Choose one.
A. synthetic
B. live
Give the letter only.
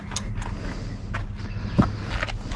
B